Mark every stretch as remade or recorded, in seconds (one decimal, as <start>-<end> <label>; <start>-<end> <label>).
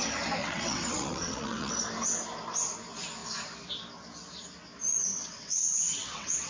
0.0-0.4 recorded; 0.4-1.7 remade; 1.7-5.1 recorded; 5.1-6.5 remade